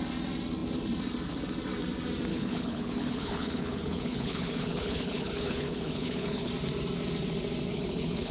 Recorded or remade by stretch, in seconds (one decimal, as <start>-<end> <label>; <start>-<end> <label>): 0.0-2.3 recorded; 2.3-6.5 remade; 6.5-7.7 recorded; 7.7-8.3 remade